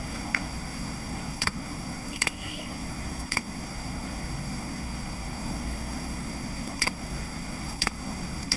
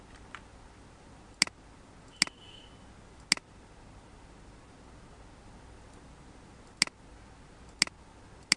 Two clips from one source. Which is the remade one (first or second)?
first